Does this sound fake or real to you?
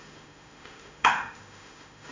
fake